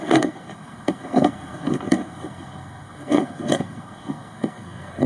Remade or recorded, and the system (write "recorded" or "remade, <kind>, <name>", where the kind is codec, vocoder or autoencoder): remade, codec, SNAC